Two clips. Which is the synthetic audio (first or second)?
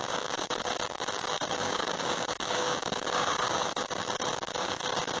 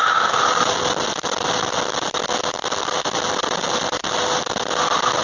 first